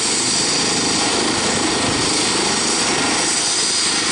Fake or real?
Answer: real